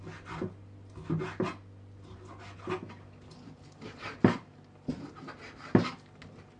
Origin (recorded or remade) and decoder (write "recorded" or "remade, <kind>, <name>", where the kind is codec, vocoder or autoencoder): recorded